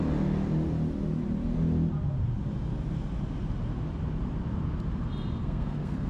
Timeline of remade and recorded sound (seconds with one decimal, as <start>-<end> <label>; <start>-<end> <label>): 0.0-5.4 recorded; 5.4-6.1 remade